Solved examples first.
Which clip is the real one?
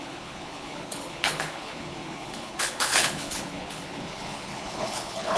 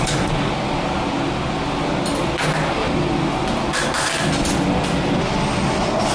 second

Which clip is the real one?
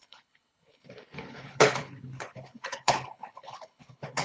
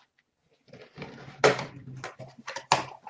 second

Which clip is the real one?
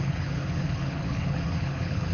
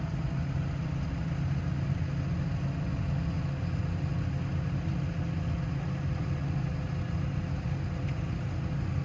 second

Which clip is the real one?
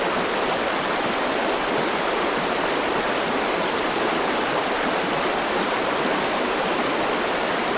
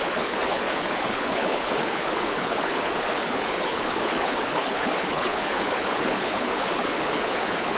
first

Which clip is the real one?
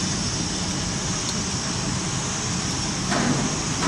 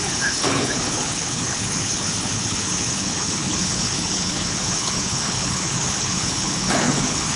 first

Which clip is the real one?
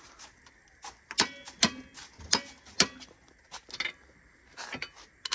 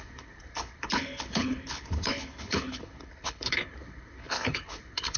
first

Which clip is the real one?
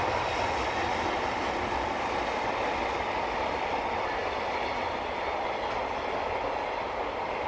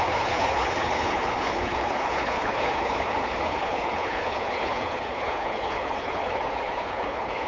first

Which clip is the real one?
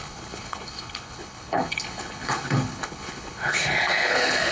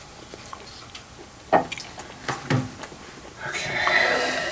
second